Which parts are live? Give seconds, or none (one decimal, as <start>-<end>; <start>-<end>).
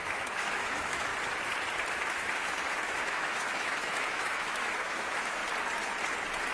1.1-1.9; 5.4-6.5